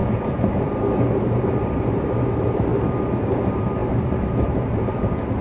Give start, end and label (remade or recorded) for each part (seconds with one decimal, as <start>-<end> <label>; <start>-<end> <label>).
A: 0.0-2.7 remade; 2.7-3.2 recorded; 3.2-5.4 remade